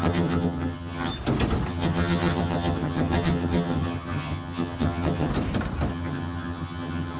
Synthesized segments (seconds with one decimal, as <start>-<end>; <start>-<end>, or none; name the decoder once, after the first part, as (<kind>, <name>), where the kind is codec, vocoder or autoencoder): 0.0-1.1 (vocoder, HiFi-GAN); 1.7-5.3; 5.9-7.2